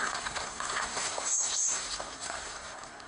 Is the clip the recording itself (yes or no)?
no